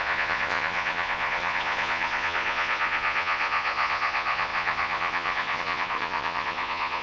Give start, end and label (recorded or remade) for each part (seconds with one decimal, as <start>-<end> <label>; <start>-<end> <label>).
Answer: 0.0-7.0 remade